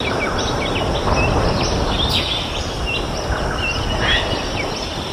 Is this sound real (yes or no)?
yes